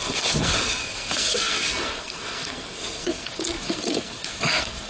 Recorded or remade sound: remade